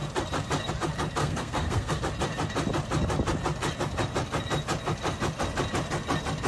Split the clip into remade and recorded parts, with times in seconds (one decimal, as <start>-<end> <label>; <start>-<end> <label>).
0.0-1.2 recorded; 1.2-2.0 remade; 2.0-6.5 recorded